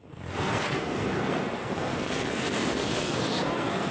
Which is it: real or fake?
fake